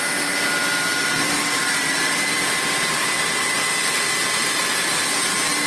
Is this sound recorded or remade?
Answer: recorded